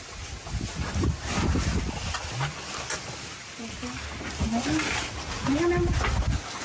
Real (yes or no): yes